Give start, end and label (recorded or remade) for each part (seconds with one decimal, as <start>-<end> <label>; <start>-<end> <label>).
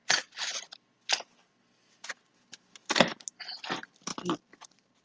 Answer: 0.0-4.1 recorded; 4.1-5.0 remade